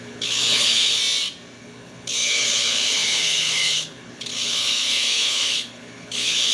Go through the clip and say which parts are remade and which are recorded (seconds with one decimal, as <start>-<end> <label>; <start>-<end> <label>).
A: 0.0-1.0 remade; 1.0-1.6 recorded; 1.6-6.5 remade